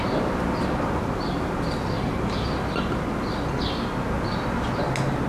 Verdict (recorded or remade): recorded